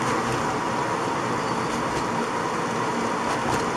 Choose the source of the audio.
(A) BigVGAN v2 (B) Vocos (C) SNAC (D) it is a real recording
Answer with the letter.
D